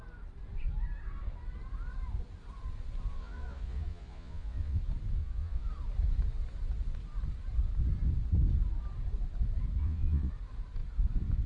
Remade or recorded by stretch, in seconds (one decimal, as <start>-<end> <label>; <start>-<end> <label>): 0.0-3.1 recorded; 3.1-4.8 remade; 4.8-5.2 recorded; 5.2-5.7 remade; 5.7-9.8 recorded; 9.8-10.3 remade; 10.3-11.5 recorded